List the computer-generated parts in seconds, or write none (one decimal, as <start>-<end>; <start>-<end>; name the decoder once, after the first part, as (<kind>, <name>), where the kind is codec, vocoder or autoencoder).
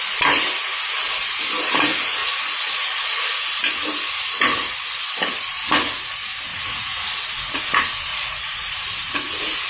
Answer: 2.2-3.2 (vocoder, Vocos); 4.5-5.0; 6.5-7.6; 8.1-8.7